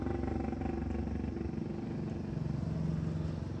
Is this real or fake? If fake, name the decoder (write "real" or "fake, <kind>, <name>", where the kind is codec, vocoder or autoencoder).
real